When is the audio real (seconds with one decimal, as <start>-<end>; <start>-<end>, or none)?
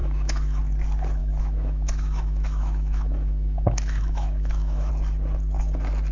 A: 0.6-1.2; 4.9-6.1